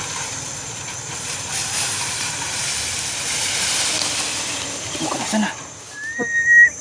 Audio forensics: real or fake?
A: real